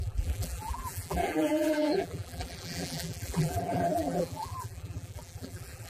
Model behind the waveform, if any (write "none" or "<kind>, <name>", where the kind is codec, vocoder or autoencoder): vocoder, BigVGAN v2